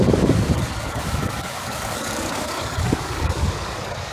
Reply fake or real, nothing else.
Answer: fake